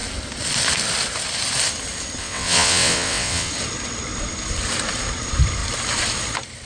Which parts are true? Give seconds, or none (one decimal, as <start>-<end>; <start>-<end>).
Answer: 0.0-2.2; 3.5-6.7